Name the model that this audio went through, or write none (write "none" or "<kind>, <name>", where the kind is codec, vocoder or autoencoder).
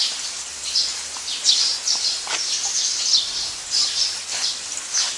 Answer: none